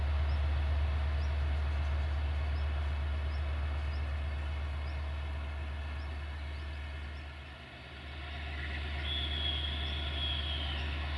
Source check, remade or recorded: recorded